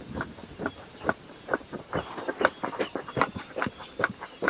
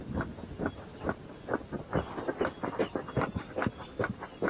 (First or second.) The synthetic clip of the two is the first